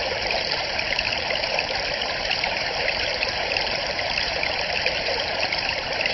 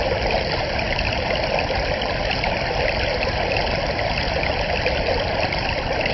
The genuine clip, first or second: second